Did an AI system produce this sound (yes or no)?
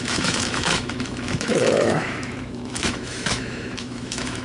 yes